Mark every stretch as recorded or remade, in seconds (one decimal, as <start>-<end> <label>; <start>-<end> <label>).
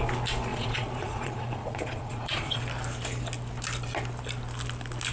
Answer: 0.0-0.5 recorded; 0.5-2.6 remade; 2.6-5.1 recorded